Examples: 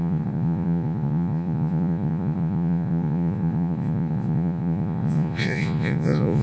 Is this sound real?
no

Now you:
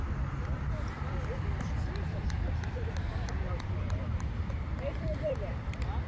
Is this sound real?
no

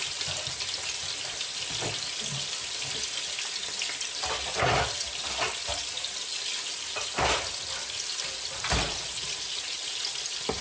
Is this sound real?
yes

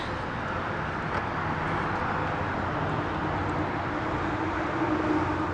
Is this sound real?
yes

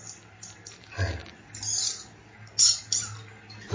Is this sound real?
yes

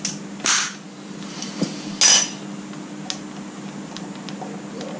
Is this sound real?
yes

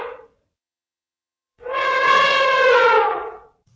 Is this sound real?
no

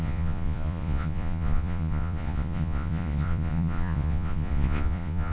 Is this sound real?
no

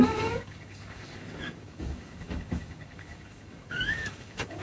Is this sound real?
no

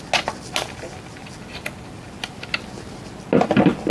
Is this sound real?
yes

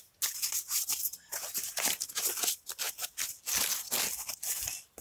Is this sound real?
yes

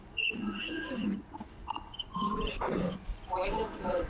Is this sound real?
no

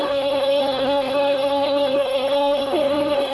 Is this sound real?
no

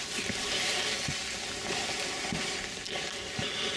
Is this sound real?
yes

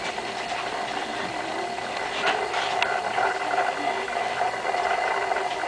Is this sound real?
yes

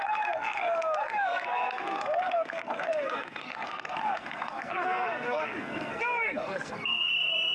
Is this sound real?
no